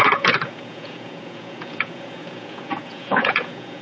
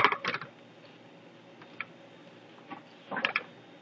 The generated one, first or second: first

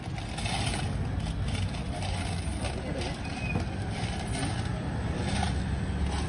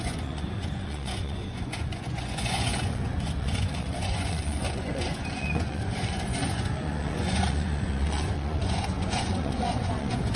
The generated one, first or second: second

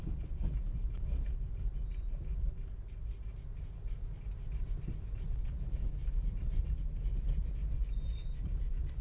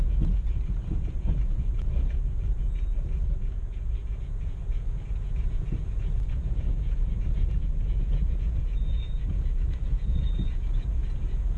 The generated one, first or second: second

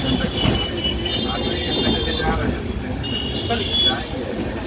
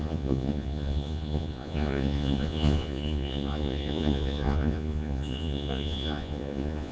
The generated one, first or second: second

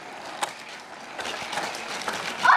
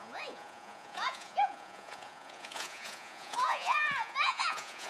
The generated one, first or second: second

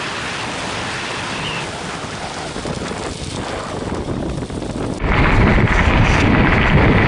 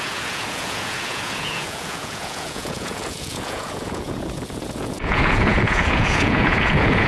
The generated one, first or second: second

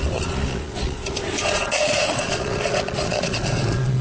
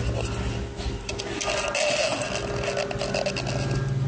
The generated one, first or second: first